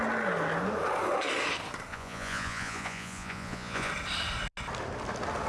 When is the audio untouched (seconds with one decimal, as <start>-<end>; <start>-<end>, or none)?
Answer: 0.0-1.9; 3.9-5.5